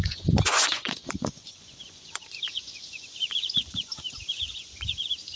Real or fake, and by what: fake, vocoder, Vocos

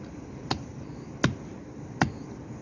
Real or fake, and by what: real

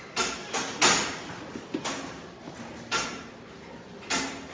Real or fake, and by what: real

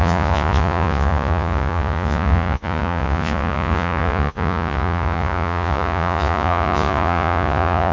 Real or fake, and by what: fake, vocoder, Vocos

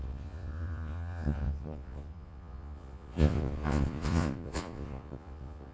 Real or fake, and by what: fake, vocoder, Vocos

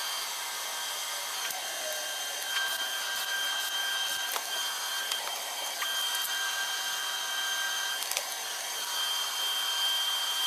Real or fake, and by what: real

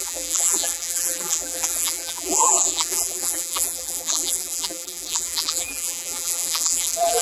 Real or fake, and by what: fake, vocoder, BigVGAN v2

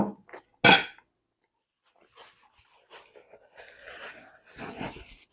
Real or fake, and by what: real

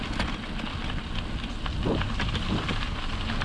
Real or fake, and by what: real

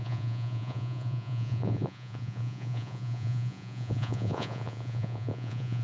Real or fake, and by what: fake, vocoder, Vocos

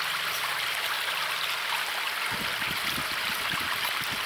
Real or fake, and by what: real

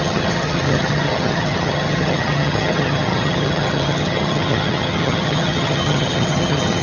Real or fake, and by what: fake, vocoder, HiFi-GAN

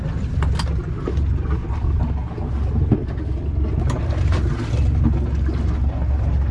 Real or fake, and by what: real